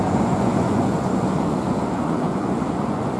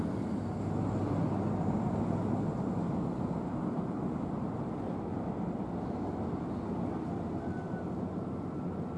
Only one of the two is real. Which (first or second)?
second